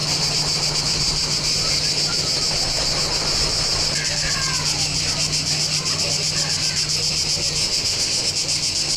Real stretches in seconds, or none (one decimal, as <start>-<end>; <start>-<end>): 0.0-7.6; 8.3-9.0